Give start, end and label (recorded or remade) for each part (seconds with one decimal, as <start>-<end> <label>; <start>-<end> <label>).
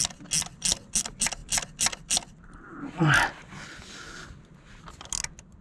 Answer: 0.0-5.6 recorded